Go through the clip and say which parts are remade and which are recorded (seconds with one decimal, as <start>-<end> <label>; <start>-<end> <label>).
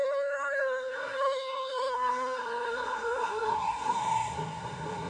0.0-5.1 remade